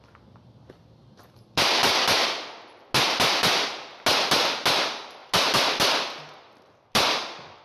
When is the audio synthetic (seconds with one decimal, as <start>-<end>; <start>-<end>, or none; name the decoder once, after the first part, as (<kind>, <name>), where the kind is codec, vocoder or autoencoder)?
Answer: none